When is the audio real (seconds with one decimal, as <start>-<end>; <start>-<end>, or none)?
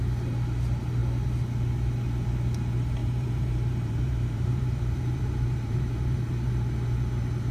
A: 0.0-3.0; 6.5-7.5